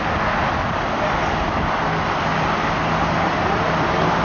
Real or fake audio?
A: real